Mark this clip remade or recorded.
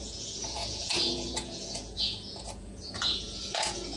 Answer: remade